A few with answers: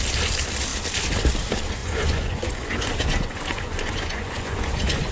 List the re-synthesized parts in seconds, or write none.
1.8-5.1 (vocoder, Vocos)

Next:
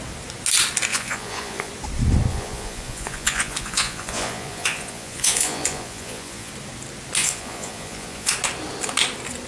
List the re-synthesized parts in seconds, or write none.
0.9-1.7 (vocoder, Vocos); 2.3-6.5; 7.2-8.3

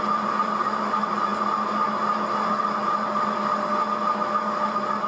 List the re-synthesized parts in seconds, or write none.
none

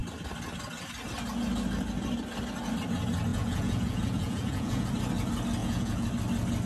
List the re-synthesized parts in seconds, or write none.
3.3-4.9 (vocoder, Vocos); 5.6-6.1

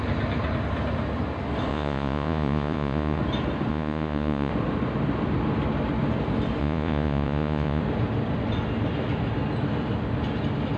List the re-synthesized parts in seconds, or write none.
1.7-3.2 (vocoder, Vocos); 3.7-4.5; 6.6-7.8

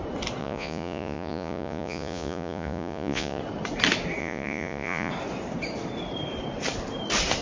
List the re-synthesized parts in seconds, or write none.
0.4-3.4 (vocoder, Vocos); 4.2-5.1

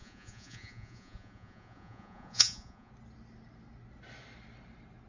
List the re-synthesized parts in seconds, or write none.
0.0-2.9 (vocoder, Vocos)